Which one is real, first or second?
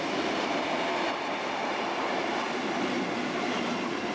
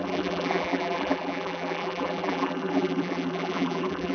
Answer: first